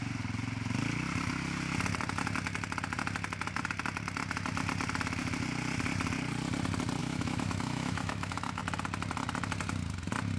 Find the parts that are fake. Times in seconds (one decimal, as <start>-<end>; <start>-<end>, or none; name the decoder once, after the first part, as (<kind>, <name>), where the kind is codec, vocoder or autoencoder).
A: 7.0-8.6 (autoencoder, DAC-VAE)